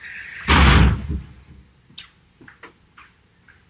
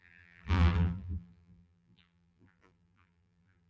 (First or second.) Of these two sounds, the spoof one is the second